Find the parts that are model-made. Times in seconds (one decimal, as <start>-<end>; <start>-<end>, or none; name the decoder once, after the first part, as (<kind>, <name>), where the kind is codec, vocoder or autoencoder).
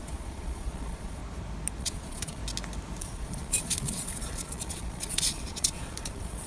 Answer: 0.0-1.2 (vocoder, Vocos); 1.8-2.4; 3.0-6.5